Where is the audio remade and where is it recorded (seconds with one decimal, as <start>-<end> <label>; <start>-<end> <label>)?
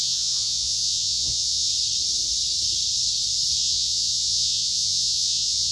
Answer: 0.0-1.7 remade; 1.7-3.6 recorded; 3.6-5.7 remade